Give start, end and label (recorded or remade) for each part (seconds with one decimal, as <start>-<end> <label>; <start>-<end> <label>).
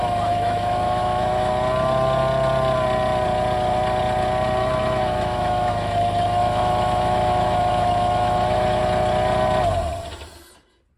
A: 0.0-1.5 remade; 1.5-4.6 recorded; 4.6-8.8 remade; 8.8-11.0 recorded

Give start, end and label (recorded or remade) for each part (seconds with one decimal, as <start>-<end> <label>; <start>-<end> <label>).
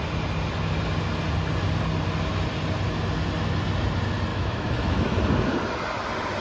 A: 0.0-4.3 recorded; 4.3-5.2 remade; 5.2-6.4 recorded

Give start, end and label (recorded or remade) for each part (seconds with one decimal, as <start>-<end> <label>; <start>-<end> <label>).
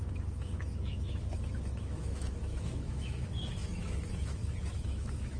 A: 0.0-5.4 remade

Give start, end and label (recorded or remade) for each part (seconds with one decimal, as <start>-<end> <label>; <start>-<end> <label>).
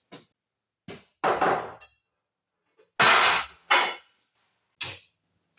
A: 0.0-5.6 recorded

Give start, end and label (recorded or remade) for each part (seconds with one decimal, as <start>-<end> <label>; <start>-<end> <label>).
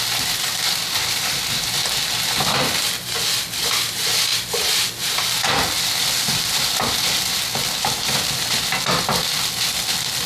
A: 0.0-10.3 recorded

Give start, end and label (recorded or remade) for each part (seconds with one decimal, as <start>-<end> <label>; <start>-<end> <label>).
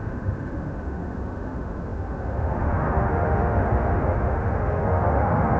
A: 0.0-5.6 remade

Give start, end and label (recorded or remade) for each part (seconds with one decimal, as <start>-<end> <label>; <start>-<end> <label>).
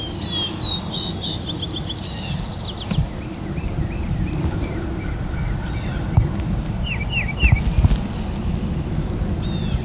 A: 0.0-9.8 recorded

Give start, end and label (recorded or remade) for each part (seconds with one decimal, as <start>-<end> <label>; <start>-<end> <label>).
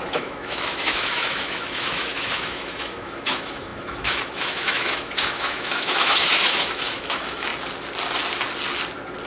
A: 0.0-7.5 remade; 7.5-9.3 recorded